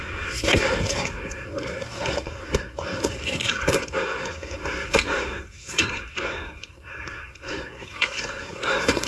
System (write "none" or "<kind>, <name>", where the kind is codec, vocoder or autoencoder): codec, SNAC